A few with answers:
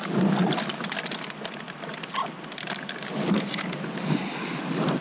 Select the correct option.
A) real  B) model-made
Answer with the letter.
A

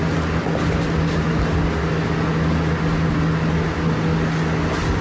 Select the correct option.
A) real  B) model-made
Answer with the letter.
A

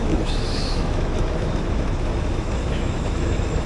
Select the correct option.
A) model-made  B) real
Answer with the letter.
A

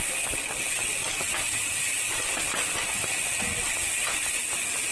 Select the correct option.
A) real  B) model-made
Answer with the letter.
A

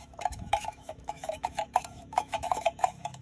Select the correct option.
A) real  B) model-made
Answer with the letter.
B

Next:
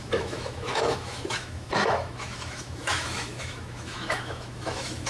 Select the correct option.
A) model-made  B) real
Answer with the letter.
A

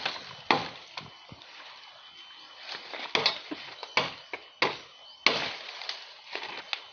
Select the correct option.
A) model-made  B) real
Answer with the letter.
B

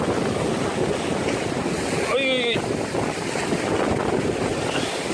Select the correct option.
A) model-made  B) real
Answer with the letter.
B